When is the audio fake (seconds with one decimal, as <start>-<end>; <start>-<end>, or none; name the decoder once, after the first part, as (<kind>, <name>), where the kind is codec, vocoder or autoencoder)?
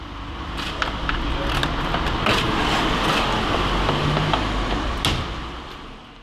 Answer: none